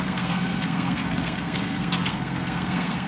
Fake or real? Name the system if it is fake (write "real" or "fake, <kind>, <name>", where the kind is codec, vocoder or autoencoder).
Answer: fake, codec, SNAC